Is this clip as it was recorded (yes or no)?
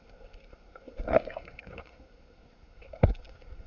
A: no